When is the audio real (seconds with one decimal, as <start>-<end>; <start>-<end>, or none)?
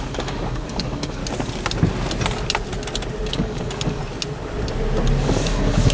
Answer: 1.2-3.3; 4.0-5.2